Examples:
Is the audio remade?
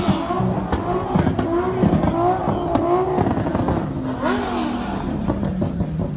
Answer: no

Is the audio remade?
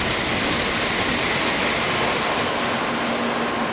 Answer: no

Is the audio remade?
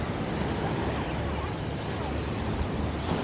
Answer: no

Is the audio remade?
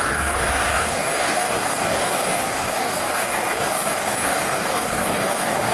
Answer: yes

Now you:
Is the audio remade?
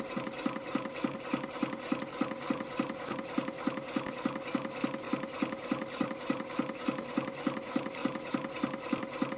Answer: no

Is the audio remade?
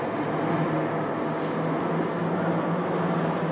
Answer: no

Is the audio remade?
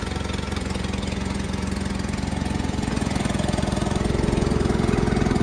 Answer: yes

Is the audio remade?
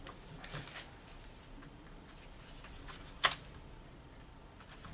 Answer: no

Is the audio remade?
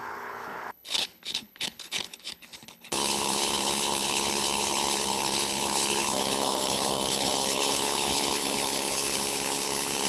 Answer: yes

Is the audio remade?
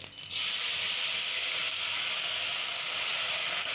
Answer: no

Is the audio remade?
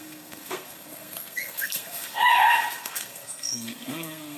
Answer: yes